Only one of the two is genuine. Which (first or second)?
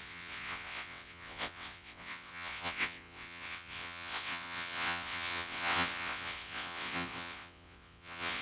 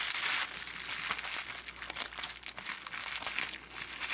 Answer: second